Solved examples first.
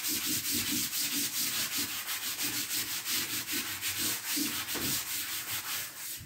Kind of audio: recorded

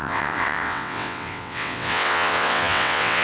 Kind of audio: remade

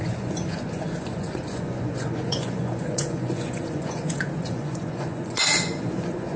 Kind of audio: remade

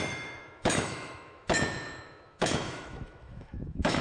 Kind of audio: remade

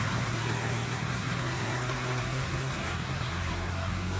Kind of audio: remade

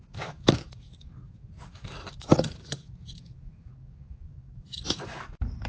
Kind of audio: remade